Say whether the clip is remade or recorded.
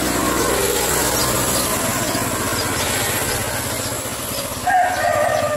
recorded